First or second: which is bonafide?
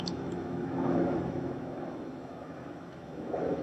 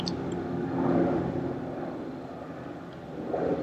second